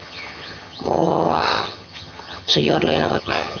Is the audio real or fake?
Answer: fake